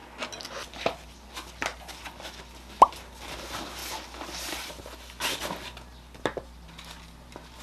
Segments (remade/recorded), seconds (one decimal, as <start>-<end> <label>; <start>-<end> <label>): 0.0-1.7 recorded; 1.7-2.4 remade; 2.4-7.6 recorded